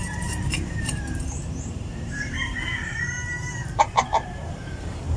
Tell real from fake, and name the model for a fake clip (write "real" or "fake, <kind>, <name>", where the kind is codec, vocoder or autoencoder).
fake, vocoder, BigVGAN v2